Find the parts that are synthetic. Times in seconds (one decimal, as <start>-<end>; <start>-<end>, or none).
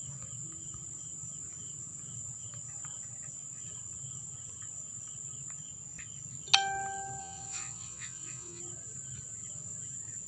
7.2-8.6